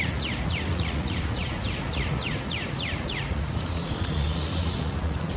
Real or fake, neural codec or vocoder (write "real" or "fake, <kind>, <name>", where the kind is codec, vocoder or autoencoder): fake, vocoder, Vocos